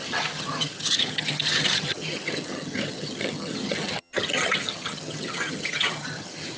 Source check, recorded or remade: remade